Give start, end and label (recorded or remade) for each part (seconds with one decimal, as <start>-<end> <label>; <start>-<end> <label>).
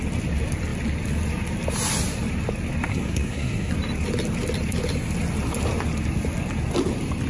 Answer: 0.0-2.9 recorded; 2.9-3.7 remade; 3.7-7.3 recorded